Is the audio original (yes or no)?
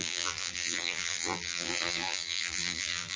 no